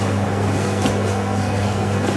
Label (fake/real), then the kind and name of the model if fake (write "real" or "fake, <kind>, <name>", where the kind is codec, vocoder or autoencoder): fake, codec, SNAC